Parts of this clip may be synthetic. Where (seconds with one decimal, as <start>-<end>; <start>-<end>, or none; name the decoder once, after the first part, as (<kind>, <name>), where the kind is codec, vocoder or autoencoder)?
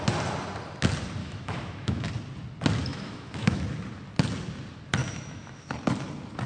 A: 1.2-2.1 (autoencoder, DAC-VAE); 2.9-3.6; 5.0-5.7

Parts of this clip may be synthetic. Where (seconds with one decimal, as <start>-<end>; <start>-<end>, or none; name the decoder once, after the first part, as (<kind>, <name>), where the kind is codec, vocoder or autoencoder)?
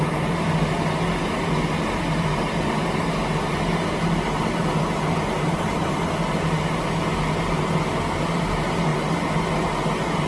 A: none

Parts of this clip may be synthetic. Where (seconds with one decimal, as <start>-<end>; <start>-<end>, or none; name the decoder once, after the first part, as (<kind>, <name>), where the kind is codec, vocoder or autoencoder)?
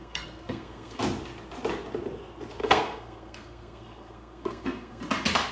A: 0.0-1.0 (codec, SNAC); 2.6-5.0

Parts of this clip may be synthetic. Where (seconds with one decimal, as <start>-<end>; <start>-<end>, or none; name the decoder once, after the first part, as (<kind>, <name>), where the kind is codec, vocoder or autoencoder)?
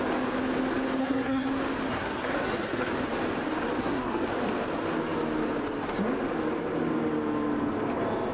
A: 1.0-1.5 (codec, SNAC); 1.9-2.9; 3.8-4.3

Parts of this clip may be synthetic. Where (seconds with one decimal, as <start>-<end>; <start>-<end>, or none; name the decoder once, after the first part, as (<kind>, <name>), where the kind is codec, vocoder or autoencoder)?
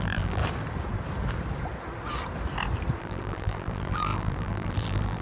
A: 0.0-0.4 (vocoder, BigVGAN v2); 3.0-5.2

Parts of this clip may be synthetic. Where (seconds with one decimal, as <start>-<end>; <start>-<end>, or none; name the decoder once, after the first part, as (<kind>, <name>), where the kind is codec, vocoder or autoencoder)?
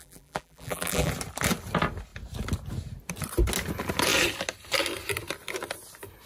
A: 0.0-1.1 (vocoder, BigVGAN v2)